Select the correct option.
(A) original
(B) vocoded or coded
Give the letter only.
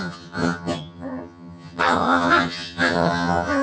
B